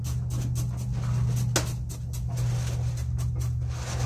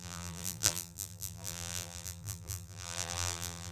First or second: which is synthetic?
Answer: second